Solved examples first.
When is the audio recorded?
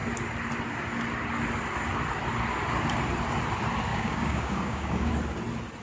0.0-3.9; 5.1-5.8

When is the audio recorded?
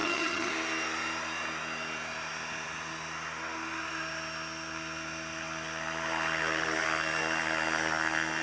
0.5-8.4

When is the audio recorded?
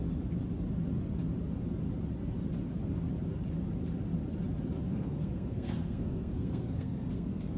0.0-4.9